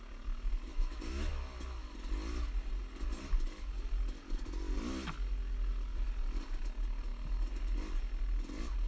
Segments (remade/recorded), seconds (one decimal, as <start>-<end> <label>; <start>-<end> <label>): 0.0-0.7 recorded; 0.7-1.3 remade; 1.3-8.9 recorded